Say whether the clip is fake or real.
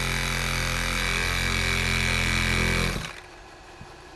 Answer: real